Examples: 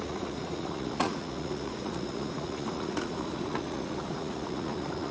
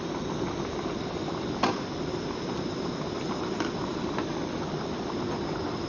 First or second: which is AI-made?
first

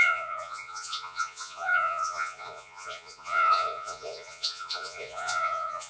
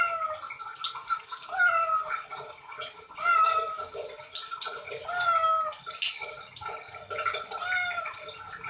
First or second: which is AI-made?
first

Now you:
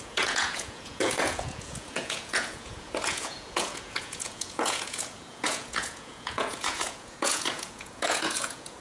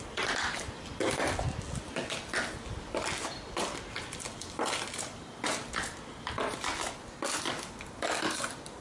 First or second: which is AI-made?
first